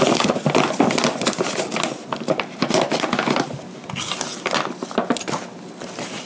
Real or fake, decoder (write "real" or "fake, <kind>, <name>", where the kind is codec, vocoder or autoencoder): real